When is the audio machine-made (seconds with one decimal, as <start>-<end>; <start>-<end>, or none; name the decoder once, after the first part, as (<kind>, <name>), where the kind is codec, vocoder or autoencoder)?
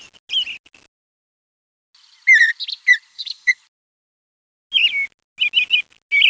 3.1-3.6 (codec, DAC)